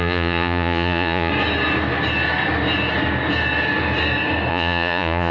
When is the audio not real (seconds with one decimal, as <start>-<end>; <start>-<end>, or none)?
0.0-1.3; 4.5-5.3